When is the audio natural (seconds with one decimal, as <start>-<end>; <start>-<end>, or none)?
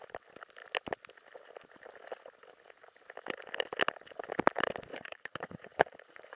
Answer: 0.0-4.9